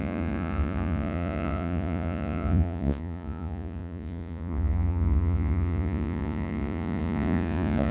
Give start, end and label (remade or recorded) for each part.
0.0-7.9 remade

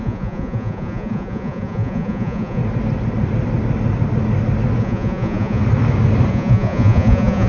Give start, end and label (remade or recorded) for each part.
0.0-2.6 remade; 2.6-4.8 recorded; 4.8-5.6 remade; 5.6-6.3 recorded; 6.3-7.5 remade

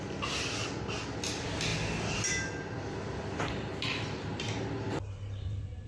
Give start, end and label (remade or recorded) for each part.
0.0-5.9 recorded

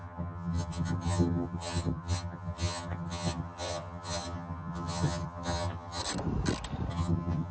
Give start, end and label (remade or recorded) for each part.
0.0-6.0 remade; 6.0-6.9 recorded; 6.9-7.5 remade

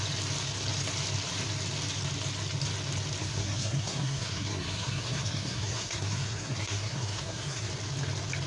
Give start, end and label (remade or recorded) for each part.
0.0-3.2 recorded; 3.2-7.7 remade; 7.7-8.5 recorded

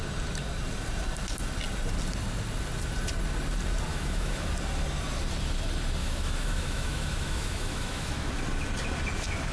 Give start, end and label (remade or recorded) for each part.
0.0-3.9 recorded; 3.9-4.5 remade; 4.5-6.0 recorded; 6.0-8.3 remade; 8.3-9.5 recorded

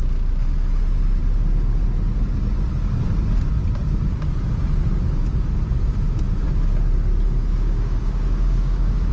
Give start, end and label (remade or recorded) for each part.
0.0-7.5 recorded; 7.5-9.1 remade

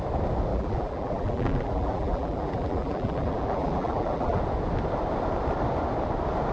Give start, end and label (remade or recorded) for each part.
0.0-0.5 recorded; 0.5-4.4 remade; 4.4-6.5 recorded